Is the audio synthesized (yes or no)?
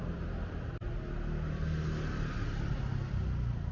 no